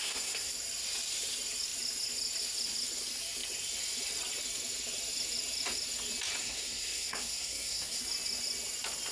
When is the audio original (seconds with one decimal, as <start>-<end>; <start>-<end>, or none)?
0.5-6.4; 8.0-9.1